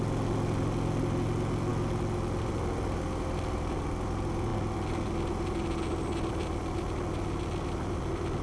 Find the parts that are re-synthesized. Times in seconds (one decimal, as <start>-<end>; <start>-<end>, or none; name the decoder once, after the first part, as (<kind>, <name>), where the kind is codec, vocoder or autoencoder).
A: none